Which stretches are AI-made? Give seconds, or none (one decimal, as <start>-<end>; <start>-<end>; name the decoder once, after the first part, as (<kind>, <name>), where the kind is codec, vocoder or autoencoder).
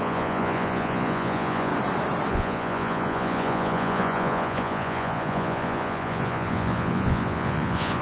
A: 0.0-1.7 (vocoder, Vocos); 2.3-8.0